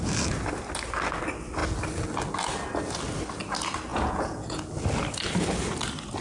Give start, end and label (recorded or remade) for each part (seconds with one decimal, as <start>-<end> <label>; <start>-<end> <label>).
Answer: 0.0-3.9 recorded; 3.9-4.7 remade; 4.7-6.2 recorded